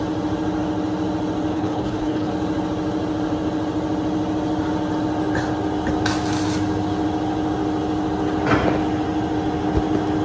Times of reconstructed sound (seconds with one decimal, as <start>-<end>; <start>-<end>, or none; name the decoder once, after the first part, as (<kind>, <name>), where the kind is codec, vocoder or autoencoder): 1.5-2.3 (codec, HILCodec)